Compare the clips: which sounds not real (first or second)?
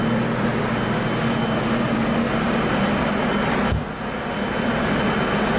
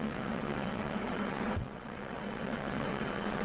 second